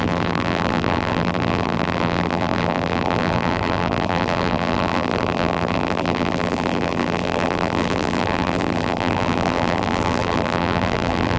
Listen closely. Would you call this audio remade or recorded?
remade